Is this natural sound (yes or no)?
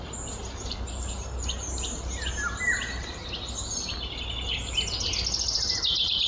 yes